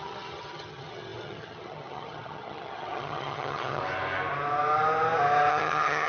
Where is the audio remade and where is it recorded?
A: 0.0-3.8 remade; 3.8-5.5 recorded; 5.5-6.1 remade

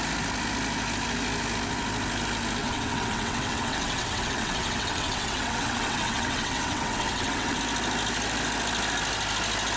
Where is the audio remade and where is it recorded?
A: 0.0-2.6 recorded; 2.6-7.6 remade; 7.6-9.8 recorded

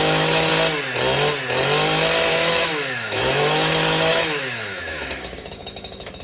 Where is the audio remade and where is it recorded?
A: 0.0-0.5 remade; 0.5-2.3 recorded; 2.3-6.2 remade

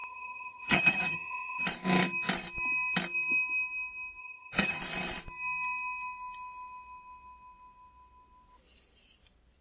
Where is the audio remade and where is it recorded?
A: 0.0-1.6 remade; 1.6-4.2 recorded; 4.2-4.8 remade; 4.8-9.6 recorded

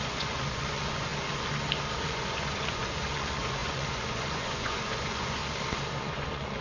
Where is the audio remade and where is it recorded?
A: 0.0-1.1 remade; 1.1-2.0 recorded; 2.0-5.4 remade; 5.4-6.0 recorded; 6.0-6.6 remade